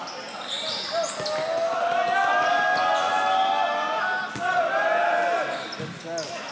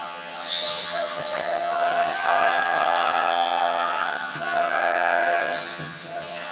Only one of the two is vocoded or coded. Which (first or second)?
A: second